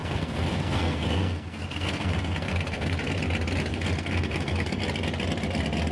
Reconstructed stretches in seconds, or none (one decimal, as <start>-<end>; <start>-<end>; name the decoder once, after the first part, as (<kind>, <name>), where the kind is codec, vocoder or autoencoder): 0.0-3.2 (codec, SNAC); 3.7-4.8